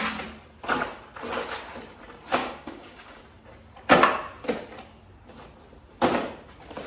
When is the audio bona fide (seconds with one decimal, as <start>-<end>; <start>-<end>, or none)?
0.0-2.4; 3.2-6.9